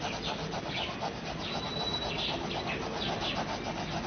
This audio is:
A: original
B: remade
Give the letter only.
A